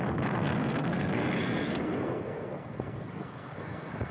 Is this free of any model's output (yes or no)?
no